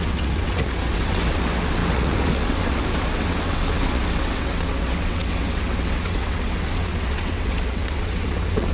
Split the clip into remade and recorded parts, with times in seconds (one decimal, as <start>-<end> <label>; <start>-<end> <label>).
0.0-8.7 remade